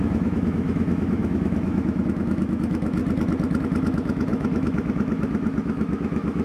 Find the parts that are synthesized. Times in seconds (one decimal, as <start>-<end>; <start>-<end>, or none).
0.0-3.0; 3.6-6.4

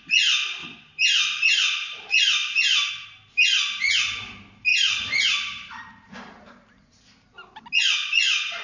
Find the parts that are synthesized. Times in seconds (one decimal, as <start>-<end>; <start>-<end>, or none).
0.6-2.9; 4.7-6.5

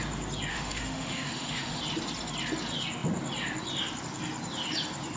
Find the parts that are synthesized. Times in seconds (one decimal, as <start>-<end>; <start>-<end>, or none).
0.5-1.8

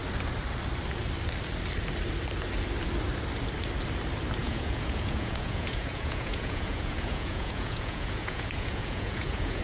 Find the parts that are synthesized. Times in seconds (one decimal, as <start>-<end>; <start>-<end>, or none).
4.4-9.6

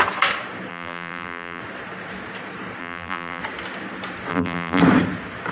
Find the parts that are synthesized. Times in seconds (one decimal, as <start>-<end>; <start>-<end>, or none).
0.7-1.6; 2.8-3.4; 4.3-4.8

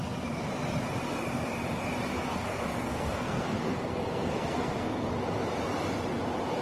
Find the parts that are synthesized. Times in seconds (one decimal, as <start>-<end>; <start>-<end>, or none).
2.3-5.1